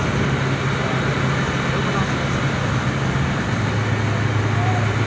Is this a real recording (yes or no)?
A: yes